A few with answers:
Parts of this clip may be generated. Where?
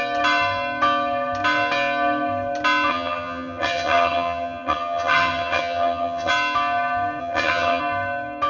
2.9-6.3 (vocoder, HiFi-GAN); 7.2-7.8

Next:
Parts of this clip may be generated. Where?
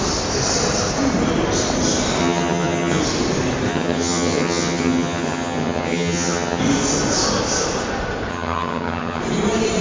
2.2-3.0 (vocoder, HiFi-GAN); 3.7-6.6; 8.3-9.2